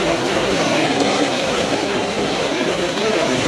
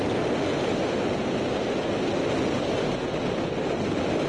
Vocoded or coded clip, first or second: first